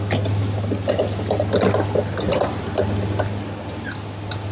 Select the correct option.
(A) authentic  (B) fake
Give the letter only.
A